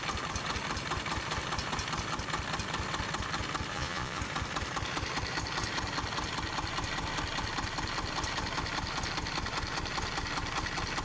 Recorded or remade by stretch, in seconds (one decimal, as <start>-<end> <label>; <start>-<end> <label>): 0.0-3.7 recorded; 3.7-4.2 remade; 4.2-11.0 recorded